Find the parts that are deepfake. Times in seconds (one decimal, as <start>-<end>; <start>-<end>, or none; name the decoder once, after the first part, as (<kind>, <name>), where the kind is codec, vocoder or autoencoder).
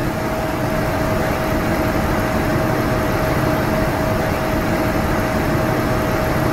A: none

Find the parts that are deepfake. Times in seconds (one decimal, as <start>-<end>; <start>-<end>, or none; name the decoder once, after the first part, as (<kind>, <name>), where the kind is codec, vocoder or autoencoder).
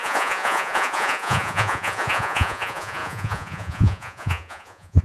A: 0.0-5.0 (vocoder, Vocos)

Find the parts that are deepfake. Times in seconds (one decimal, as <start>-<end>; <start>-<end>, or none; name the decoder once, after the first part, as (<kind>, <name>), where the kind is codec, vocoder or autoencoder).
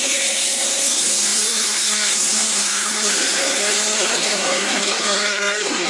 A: 0.0-5.9 (codec, SNAC)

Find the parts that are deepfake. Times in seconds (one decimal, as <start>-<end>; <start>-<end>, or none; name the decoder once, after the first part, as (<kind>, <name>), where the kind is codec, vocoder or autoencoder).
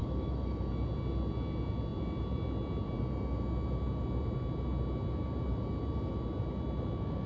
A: 0.0-0.7 (autoencoder, DAC-VAE)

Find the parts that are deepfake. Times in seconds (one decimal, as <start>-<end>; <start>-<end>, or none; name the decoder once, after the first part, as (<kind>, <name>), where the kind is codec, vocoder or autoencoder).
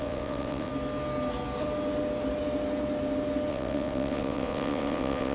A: 0.0-0.7 (vocoder, WaveNeXt); 3.5-5.3